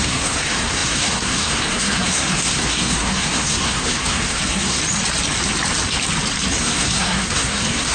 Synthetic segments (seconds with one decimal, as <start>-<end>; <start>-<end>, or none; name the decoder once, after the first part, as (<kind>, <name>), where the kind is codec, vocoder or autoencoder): 0.0-4.8 (codec, SNAC); 6.6-7.9